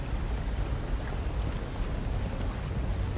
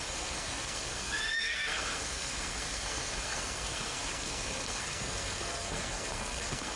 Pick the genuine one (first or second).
first